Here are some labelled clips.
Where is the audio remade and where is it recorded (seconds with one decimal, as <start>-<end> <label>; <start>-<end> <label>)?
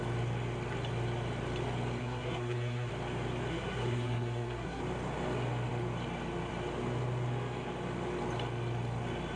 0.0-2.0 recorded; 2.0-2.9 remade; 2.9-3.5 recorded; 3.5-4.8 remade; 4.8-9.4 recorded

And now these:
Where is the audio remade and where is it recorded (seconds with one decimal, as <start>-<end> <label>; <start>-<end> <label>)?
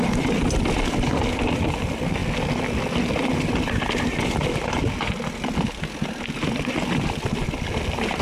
0.0-8.2 recorded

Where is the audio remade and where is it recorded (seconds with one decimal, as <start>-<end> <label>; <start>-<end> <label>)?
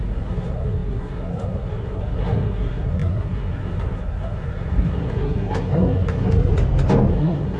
0.0-6.5 remade; 6.5-7.1 recorded; 7.1-7.6 remade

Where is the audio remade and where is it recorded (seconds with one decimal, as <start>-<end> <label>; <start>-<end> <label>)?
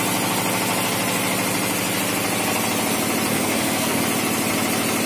0.0-3.3 recorded; 3.3-4.0 remade; 4.0-5.1 recorded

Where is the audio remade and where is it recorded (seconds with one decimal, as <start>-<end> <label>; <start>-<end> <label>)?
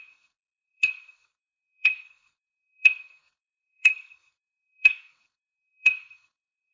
0.0-6.7 remade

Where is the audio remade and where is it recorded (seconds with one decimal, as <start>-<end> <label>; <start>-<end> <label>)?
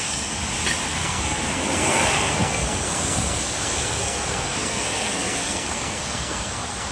0.0-0.4 remade; 0.4-0.9 recorded; 0.9-6.9 remade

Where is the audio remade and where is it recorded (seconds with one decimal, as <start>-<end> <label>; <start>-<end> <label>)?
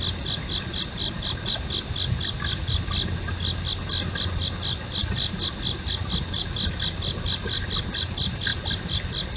0.0-9.4 recorded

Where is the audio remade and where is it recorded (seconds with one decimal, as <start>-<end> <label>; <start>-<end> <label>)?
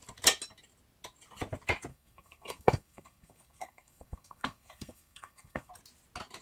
0.0-1.9 recorded; 1.9-5.7 remade; 5.7-6.4 recorded